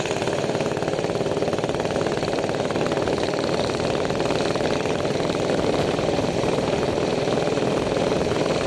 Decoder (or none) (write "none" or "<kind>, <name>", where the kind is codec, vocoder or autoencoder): vocoder, BigVGAN v2